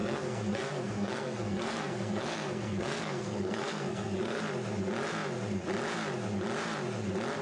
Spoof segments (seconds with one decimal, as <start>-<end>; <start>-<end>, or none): 0.0-4.4

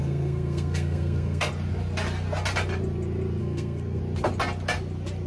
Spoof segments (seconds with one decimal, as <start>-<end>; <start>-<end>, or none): 0.0-1.5; 3.4-4.0

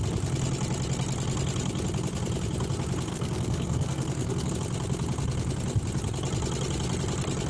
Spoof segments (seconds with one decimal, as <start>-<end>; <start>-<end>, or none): 3.1-4.5

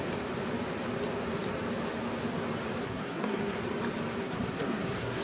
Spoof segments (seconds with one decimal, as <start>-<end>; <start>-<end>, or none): 2.8-3.6; 4.2-5.2

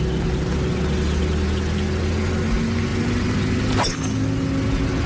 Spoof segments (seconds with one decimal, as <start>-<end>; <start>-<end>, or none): none

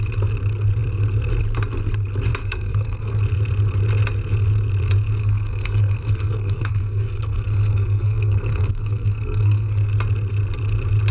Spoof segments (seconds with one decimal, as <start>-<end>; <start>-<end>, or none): 2.4-3.2; 5.2-9.9

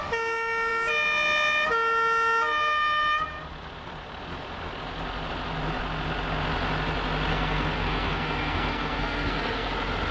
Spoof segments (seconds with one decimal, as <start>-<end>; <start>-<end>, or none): 7.3-9.7